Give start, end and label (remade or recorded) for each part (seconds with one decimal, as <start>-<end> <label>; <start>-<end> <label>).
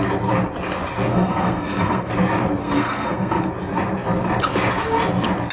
0.0-1.1 recorded; 1.1-2.1 remade; 2.1-2.6 recorded; 2.6-3.5 remade; 3.5-5.5 recorded